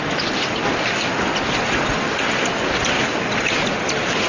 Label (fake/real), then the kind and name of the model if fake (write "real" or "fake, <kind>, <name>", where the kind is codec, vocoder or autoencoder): real